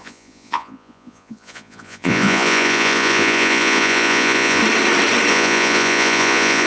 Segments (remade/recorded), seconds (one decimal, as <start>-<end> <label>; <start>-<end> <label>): 0.0-4.6 remade; 4.6-5.3 recorded; 5.3-6.7 remade